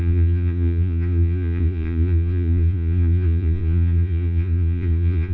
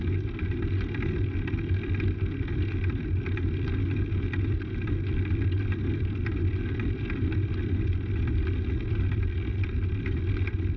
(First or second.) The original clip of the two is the second